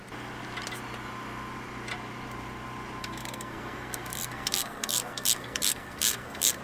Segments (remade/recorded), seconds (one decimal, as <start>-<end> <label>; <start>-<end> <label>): 0.0-3.0 recorded; 3.0-6.6 remade